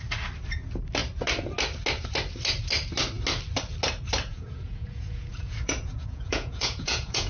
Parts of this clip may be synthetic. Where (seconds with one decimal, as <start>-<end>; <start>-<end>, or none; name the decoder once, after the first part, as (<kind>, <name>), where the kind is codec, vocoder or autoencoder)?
4.3-7.3 (vocoder, Vocos)